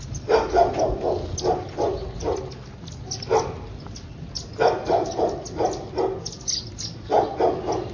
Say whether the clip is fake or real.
real